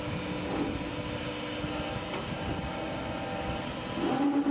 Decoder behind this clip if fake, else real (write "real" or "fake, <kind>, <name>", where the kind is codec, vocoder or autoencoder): real